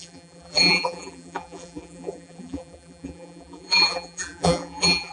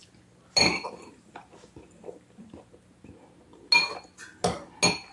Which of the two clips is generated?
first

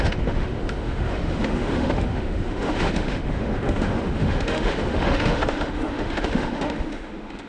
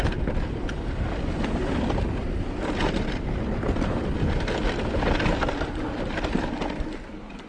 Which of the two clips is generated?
first